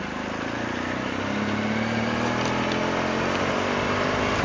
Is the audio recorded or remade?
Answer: recorded